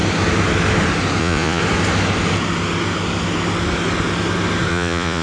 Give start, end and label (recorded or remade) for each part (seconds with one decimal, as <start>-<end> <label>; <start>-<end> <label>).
0.0-1.2 recorded; 1.2-1.6 remade; 1.6-4.7 recorded; 4.7-5.2 remade